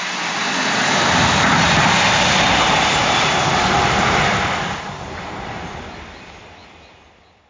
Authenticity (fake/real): fake